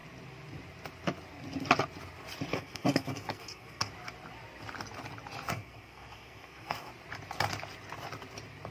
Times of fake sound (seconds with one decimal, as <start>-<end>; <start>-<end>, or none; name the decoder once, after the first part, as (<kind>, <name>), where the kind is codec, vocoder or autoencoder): 2.5-3.9 (codec, SNAC); 5.4-6.9